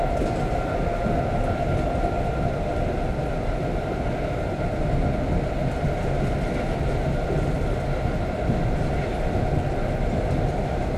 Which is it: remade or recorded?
recorded